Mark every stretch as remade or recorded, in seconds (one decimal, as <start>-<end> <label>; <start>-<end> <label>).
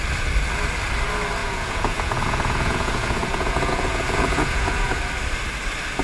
0.0-1.4 recorded; 1.4-5.0 remade; 5.0-6.0 recorded